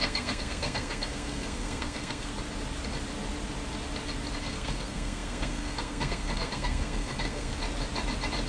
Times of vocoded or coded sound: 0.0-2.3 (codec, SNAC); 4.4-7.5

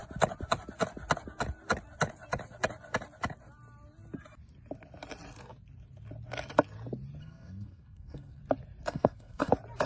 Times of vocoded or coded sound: 7.2-8.4 (codec, SNAC); 8.9-9.5

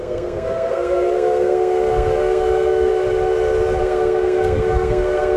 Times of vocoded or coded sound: 0.0-2.9 (codec, SNAC); 3.8-5.4

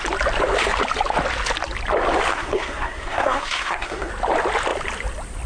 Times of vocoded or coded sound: 2.3-4.1 (codec, SNAC)

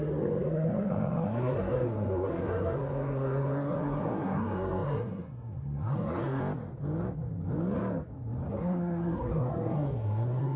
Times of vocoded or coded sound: 0.0-6.4 (codec, SNAC); 8.5-10.6